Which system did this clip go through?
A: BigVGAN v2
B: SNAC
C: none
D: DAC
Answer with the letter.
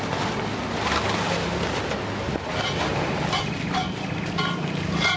C